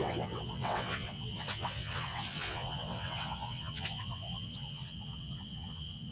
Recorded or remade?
remade